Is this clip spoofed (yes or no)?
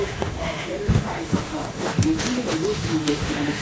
yes